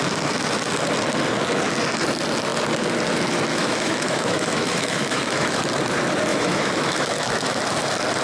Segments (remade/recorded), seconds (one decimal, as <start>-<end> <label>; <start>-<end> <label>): 0.0-3.5 recorded; 3.5-5.6 remade; 5.6-6.3 recorded; 6.3-7.6 remade; 7.6-8.2 recorded